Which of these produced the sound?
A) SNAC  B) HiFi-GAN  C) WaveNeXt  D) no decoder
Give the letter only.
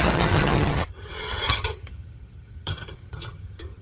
B